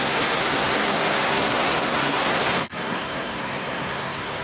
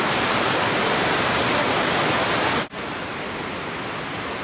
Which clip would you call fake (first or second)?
first